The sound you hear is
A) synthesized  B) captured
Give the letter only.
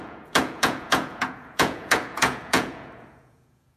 A